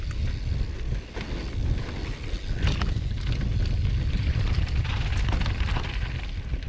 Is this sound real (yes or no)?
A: yes